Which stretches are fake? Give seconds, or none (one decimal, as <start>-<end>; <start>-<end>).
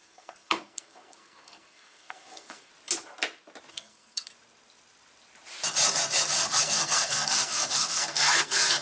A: 0.0-2.7; 3.7-4.3; 6.6-8.8